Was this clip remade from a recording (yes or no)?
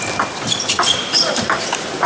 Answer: no